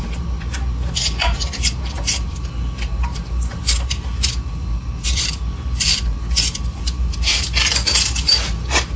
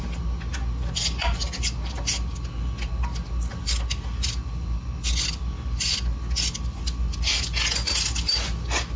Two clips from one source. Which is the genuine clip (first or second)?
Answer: second